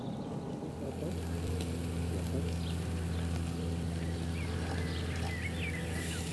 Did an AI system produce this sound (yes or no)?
no